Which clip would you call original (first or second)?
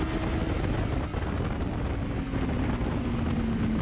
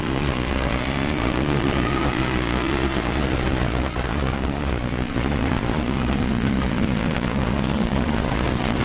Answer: first